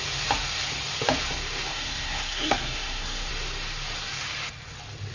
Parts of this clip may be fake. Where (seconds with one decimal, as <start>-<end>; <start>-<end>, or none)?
1.7-3.3